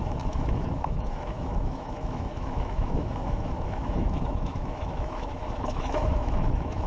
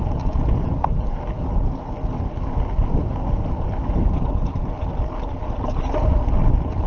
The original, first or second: second